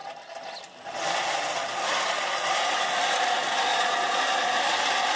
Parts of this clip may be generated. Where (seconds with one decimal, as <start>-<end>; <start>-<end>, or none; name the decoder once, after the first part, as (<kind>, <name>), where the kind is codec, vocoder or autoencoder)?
3.7-4.2 (vocoder, Vocos)